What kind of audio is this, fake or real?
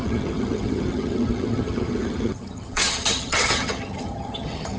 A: fake